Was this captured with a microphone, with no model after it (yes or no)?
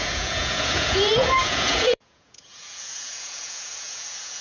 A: no